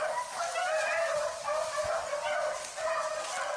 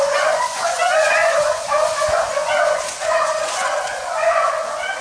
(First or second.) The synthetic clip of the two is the second